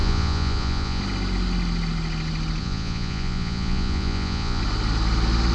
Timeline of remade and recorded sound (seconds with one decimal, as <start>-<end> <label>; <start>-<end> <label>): 0.0-1.0 remade; 1.0-2.6 recorded; 2.6-4.6 remade; 4.6-5.5 recorded